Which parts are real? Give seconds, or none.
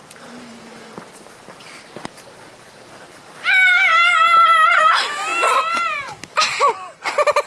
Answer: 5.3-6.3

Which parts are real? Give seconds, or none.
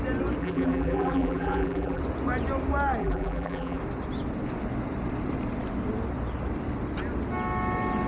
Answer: 0.0-0.4; 2.0-3.0; 3.8-8.1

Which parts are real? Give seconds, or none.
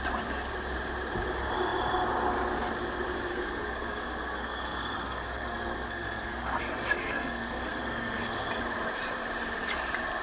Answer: 0.0-3.3; 6.6-7.0; 8.5-10.2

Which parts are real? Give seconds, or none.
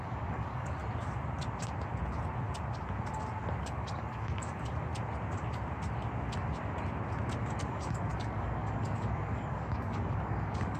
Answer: 0.8-3.6; 4.9-7.4